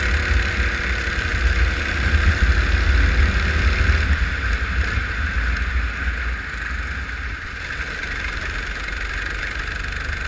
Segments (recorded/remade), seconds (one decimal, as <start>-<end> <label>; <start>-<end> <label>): 0.0-10.3 recorded